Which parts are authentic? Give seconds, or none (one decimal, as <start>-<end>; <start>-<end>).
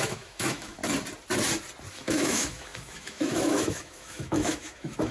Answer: 0.8-1.9